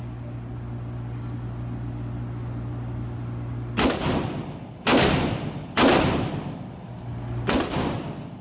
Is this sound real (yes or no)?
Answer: yes